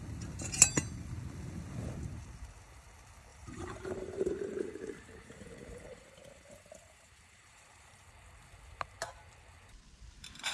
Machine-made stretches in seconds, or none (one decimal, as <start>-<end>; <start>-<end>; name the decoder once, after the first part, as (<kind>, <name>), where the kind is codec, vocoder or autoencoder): 3.3-8.1 (vocoder, BigVGAN v2)